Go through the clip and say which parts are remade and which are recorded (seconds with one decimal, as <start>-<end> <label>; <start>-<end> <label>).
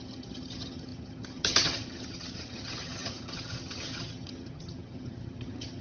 0.0-5.8 remade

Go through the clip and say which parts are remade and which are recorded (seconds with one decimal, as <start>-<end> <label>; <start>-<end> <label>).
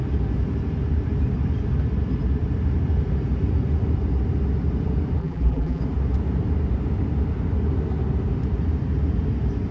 0.0-5.2 recorded; 5.2-5.8 remade; 5.8-9.7 recorded